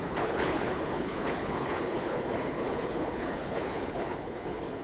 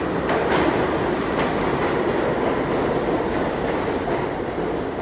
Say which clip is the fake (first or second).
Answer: first